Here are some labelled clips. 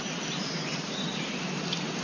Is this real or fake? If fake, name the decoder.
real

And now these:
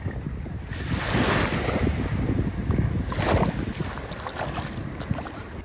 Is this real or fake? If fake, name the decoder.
real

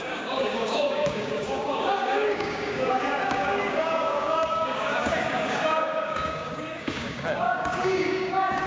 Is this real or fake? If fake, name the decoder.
fake, codec, DAC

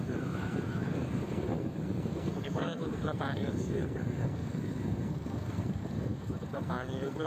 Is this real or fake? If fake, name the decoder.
fake, codec, SNAC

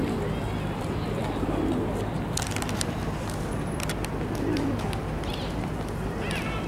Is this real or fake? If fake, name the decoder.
real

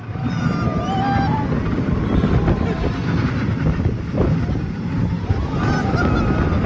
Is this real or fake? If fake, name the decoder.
real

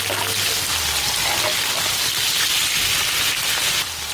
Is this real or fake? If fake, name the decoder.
real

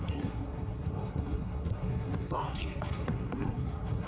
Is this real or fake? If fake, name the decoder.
fake, codec, SNAC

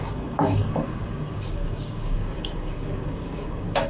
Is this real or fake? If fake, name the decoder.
fake, codec, DAC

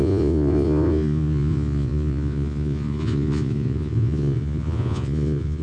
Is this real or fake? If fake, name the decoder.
fake, vocoder, Vocos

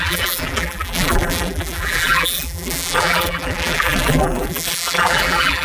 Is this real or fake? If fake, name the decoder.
fake, vocoder, BigVGAN v2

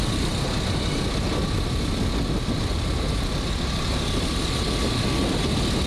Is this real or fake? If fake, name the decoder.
real